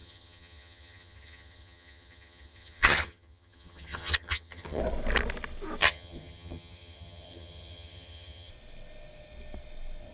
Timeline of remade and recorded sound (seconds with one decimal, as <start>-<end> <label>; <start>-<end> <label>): 0.0-4.8 remade; 4.8-5.8 recorded; 5.8-8.5 remade; 8.5-10.1 recorded